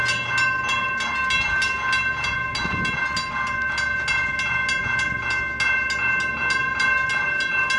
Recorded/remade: recorded